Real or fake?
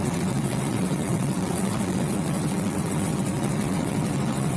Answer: fake